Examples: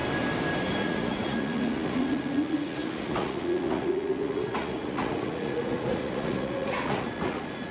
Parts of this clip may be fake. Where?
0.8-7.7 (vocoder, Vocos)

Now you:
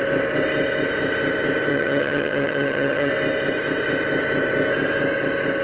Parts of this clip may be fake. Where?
1.7-3.1 (vocoder, HiFi-GAN)

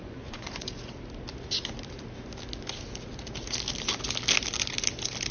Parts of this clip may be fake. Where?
0.0-0.9 (vocoder, Vocos)